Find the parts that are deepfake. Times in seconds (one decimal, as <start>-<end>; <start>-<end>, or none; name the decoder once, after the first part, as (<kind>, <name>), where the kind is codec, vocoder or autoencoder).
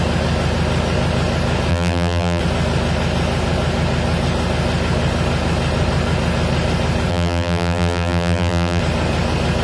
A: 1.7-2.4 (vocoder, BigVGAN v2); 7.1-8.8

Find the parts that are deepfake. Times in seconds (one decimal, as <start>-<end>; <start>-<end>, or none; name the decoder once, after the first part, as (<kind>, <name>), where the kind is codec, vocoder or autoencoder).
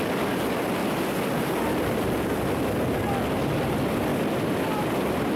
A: 0.8-2.4 (vocoder, BigVGAN v2); 4.1-5.4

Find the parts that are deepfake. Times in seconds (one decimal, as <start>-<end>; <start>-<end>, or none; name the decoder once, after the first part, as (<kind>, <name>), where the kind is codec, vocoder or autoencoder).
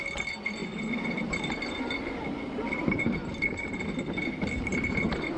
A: 0.6-3.8 (vocoder, BigVGAN v2)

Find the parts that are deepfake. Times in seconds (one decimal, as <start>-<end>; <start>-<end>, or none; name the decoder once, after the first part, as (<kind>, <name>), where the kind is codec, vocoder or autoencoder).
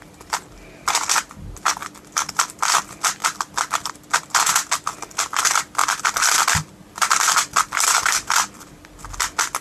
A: 1.8-2.5 (vocoder, BigVGAN v2); 5.8-9.0